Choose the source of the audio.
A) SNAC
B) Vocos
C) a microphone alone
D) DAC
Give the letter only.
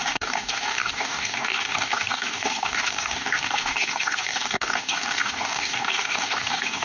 D